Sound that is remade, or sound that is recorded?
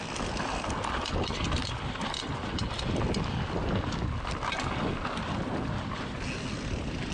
recorded